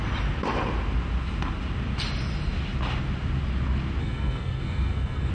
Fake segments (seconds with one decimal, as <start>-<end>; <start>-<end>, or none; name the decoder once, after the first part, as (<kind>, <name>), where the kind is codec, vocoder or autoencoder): 4.0-5.3 (codec, SNAC)